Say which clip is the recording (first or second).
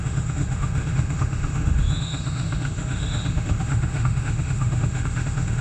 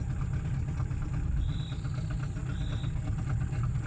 second